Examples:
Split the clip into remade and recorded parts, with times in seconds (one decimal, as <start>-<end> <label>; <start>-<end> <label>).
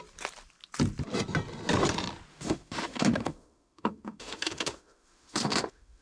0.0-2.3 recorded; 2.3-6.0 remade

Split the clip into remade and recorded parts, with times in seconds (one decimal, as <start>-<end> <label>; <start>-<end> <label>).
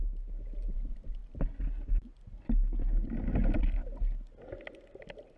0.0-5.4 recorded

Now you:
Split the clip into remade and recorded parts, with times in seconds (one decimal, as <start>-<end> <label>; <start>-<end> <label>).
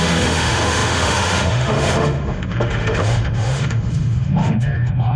0.0-5.2 remade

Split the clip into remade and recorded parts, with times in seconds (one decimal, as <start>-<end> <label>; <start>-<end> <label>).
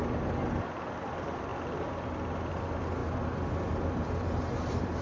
0.0-5.0 recorded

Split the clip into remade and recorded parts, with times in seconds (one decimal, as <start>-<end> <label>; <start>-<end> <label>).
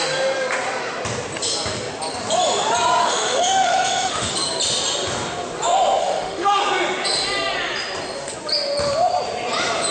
0.0-3.0 recorded; 3.0-4.3 remade; 4.3-6.0 recorded; 6.0-6.6 remade; 6.6-9.9 recorded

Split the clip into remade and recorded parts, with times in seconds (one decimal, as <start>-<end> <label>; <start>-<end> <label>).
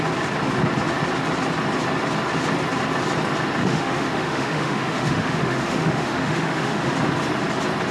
0.0-3.6 recorded; 3.6-6.9 remade; 6.9-7.9 recorded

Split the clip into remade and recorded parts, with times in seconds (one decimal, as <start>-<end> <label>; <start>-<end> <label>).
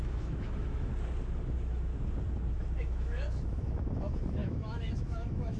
0.0-0.9 remade; 0.9-1.4 recorded; 1.4-1.9 remade; 1.9-2.8 recorded; 2.8-5.6 remade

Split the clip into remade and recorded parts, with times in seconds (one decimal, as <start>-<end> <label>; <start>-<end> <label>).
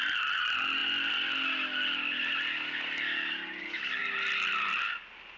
0.0-5.4 recorded